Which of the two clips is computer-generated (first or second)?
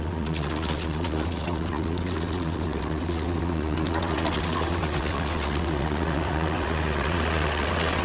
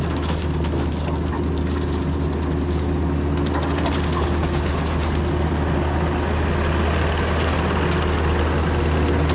first